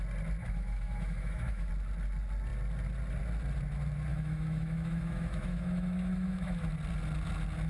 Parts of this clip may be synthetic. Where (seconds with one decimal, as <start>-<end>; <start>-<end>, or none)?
0.4-1.7; 4.1-6.7